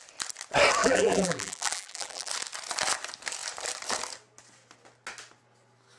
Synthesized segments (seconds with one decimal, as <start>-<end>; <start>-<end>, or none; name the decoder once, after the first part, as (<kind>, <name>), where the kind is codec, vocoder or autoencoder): 0.8-2.3 (vocoder, BigVGAN v2)